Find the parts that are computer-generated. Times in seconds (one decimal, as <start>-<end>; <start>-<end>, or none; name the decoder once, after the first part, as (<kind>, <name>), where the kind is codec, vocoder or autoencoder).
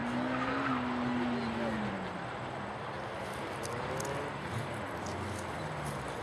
none